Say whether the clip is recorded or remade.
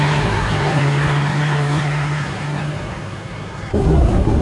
remade